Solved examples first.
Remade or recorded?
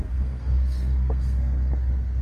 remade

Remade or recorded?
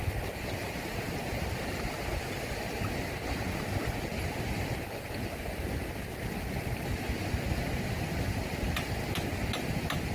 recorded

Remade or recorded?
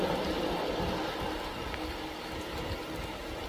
recorded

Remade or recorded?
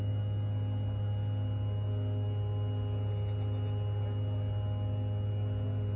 recorded